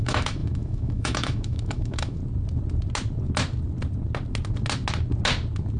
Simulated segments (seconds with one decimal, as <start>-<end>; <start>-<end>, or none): 0.0-2.2